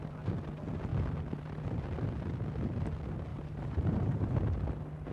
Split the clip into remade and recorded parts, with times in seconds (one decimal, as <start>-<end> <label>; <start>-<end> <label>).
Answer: 0.0-3.3 recorded; 3.3-4.4 remade; 4.4-5.1 recorded